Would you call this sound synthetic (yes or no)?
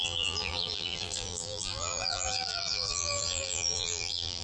yes